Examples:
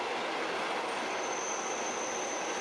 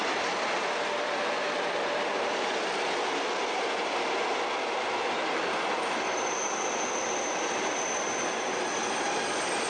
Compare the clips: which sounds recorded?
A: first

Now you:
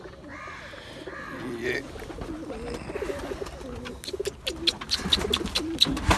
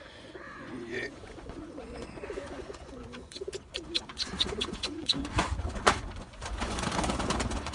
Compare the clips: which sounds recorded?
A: first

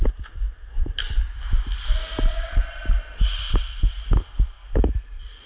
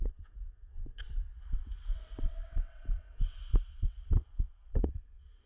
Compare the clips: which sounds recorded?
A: first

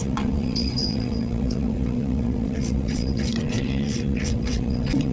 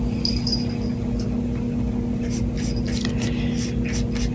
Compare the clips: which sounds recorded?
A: second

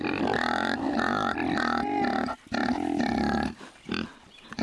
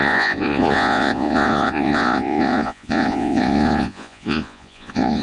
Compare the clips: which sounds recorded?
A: first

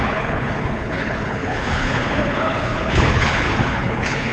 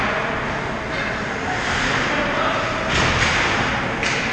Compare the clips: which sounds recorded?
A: second